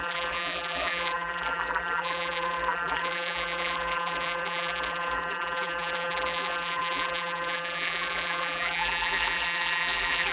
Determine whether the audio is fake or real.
fake